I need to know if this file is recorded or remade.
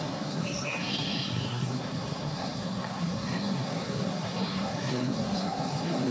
remade